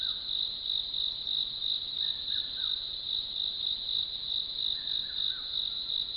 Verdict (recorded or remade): recorded